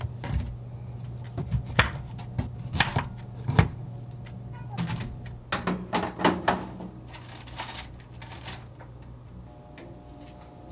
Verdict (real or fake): real